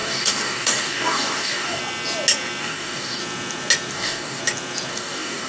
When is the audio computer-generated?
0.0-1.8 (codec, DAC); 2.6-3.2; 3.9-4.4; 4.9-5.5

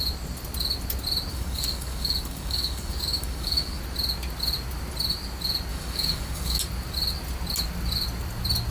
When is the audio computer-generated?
1.3-3.8 (codec, DAC); 5.7-6.6

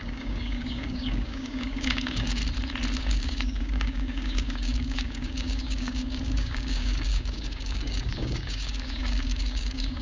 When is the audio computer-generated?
0.0-2.4 (codec, DAC); 3.0-10.0

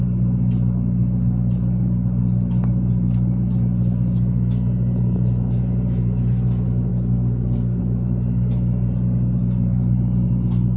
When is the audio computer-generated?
6.9-7.8 (codec, DAC)

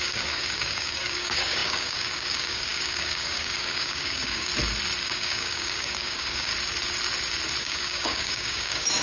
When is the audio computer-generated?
0.0-4.5 (codec, DAC); 5.0-6.5; 7.6-9.0